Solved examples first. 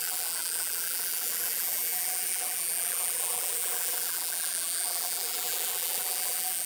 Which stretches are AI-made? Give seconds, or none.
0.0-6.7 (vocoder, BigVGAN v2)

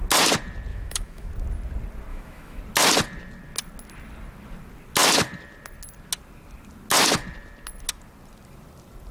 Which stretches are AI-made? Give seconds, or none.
0.7-1.3 (autoencoder, DAC-VAE); 2.1-2.6